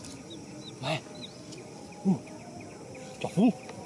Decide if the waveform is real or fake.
real